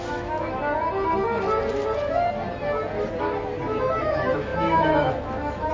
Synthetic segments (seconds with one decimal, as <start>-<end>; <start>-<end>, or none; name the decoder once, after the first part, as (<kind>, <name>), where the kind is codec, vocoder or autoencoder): 0.0-0.6 (autoencoder, DAC-VAE); 4.0-5.7